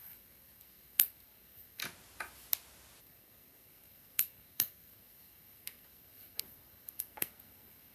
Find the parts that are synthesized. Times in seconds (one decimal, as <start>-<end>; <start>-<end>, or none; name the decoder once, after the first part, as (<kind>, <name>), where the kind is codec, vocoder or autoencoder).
0.0-1.8 (codec, SNAC); 3.0-7.9